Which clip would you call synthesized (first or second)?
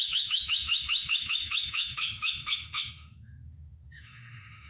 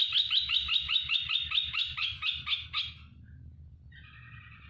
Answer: first